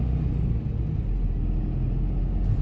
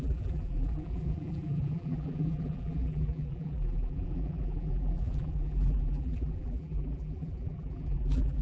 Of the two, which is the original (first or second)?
first